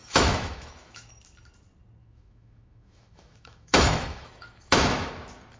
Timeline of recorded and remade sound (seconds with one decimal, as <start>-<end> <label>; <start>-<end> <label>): 0.0-1.1 remade; 1.1-2.0 recorded; 2.0-5.1 remade; 5.1-5.6 recorded